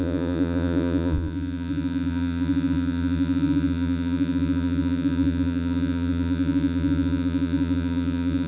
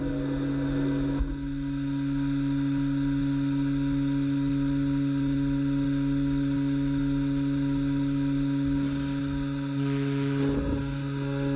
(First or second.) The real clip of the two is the second